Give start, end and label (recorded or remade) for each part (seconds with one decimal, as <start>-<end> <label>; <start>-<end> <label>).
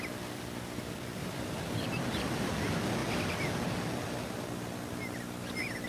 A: 0.0-1.2 recorded; 1.2-2.5 remade; 2.5-5.9 recorded